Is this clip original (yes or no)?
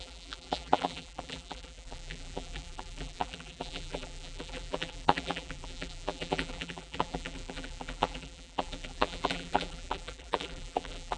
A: no